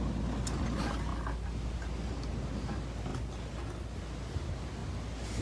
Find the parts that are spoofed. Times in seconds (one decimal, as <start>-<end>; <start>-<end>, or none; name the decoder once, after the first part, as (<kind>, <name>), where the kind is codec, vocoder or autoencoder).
none